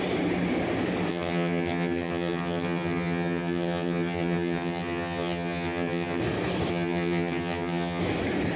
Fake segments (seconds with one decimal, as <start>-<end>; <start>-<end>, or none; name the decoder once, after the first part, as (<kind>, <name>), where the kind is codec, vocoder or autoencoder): 1.1-6.2 (vocoder, HiFi-GAN); 6.7-8.0